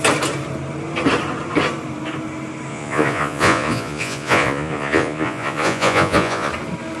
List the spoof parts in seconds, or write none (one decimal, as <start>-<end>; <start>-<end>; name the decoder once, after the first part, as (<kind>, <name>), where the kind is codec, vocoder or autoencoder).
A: 2.7-6.5 (vocoder, Vocos)